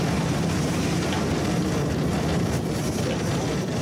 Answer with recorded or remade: recorded